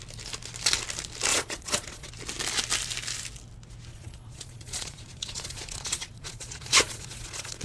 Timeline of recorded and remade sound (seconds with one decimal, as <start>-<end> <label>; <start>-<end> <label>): 0.0-1.3 recorded; 1.3-2.1 remade; 2.1-3.9 recorded; 3.9-7.6 remade